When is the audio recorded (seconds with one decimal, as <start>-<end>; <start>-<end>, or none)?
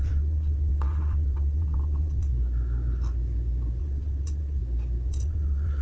2.3-3.8; 4.6-5.1